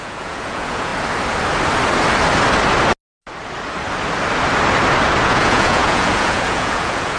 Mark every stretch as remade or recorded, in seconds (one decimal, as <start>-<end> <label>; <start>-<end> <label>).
0.0-0.9 remade; 0.9-5.2 recorded; 5.2-7.2 remade